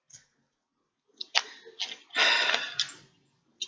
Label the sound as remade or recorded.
recorded